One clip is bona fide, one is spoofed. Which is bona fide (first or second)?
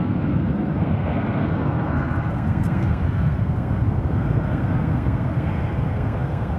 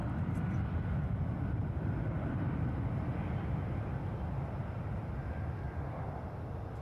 second